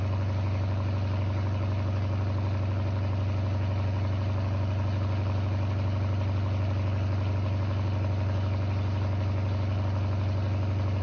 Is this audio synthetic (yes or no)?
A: no